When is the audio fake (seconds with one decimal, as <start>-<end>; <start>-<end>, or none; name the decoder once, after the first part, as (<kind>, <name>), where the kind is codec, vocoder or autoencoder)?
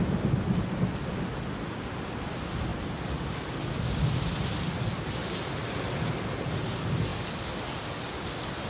none